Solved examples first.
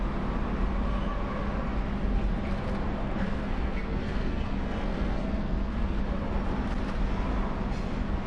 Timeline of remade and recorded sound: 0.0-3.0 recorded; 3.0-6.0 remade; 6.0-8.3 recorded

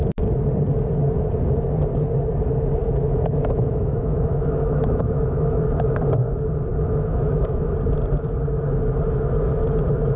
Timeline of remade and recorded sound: 0.0-2.8 recorded; 2.8-5.6 remade; 5.6-6.7 recorded; 6.7-7.7 remade; 7.7-10.2 recorded

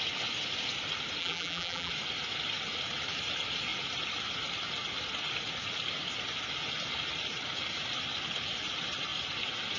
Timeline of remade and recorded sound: 0.0-1.2 recorded; 1.2-1.9 remade; 1.9-9.8 recorded

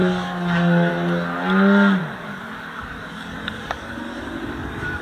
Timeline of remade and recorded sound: 0.0-0.9 remade; 0.9-2.0 recorded; 2.0-5.0 remade